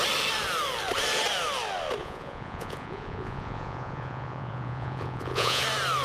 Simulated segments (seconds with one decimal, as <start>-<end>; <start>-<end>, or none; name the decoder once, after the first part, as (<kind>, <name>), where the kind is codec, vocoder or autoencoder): 2.0-5.6 (vocoder, Vocos)